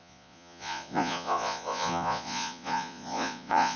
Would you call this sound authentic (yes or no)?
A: no